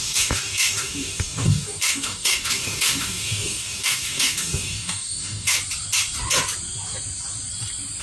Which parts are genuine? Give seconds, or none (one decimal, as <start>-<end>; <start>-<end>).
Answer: 5.6-8.0